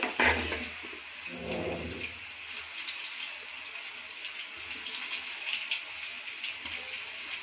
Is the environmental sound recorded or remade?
recorded